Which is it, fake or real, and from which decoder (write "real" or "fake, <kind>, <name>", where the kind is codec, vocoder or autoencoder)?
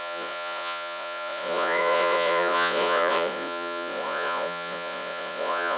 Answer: fake, vocoder, Vocos